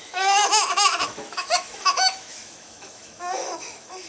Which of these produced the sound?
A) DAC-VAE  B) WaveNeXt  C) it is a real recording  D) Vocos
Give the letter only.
A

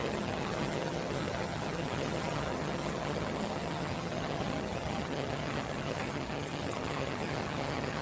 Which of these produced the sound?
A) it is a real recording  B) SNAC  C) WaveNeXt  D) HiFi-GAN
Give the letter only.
D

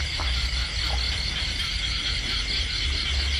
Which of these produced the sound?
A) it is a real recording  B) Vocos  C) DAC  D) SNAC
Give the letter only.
A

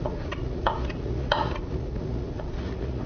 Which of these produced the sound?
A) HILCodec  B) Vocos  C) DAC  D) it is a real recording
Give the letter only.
B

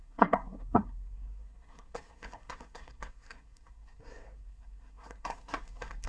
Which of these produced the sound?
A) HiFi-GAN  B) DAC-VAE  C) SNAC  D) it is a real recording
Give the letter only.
C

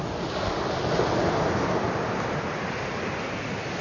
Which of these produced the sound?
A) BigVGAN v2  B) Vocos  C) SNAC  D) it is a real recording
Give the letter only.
D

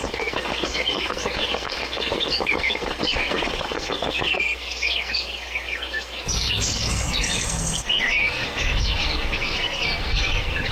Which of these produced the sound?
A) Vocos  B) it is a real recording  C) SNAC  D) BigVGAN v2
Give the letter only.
C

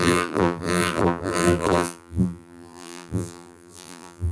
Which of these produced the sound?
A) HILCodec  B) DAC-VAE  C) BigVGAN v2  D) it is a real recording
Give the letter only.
C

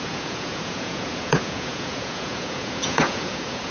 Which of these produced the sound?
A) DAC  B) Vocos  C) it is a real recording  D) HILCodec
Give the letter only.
B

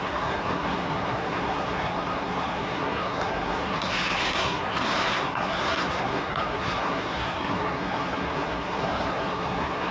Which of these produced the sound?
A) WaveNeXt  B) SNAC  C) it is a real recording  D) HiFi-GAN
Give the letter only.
B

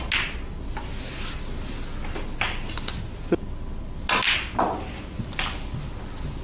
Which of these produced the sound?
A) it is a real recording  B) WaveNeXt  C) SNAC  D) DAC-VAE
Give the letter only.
A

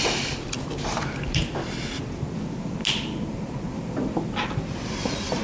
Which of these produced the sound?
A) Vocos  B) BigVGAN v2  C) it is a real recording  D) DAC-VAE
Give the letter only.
C